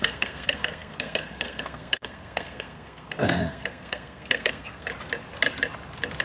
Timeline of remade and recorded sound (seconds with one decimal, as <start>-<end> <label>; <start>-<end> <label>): 0.0-4.9 remade; 4.9-6.2 recorded